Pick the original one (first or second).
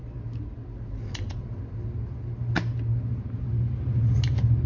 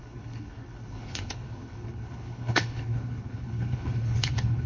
first